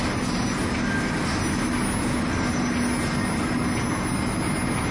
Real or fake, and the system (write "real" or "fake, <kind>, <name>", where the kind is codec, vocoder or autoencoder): real